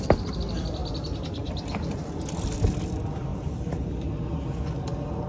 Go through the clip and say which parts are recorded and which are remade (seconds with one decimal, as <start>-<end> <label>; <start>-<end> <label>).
0.0-0.8 recorded; 0.8-2.3 remade; 2.3-5.3 recorded